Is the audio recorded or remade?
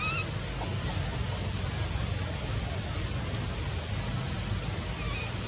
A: recorded